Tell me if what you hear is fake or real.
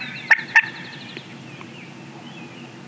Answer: real